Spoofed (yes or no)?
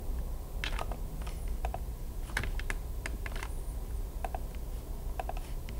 no